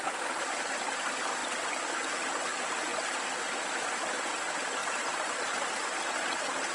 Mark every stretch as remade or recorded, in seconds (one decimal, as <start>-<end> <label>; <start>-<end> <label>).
0.0-6.7 recorded